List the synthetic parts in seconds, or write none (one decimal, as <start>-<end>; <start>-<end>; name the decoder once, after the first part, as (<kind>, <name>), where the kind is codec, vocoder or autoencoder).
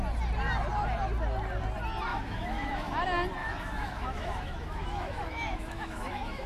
2.1-2.9 (autoencoder, DAC-VAE); 3.4-6.5